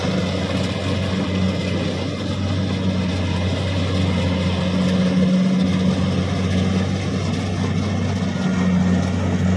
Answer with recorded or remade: recorded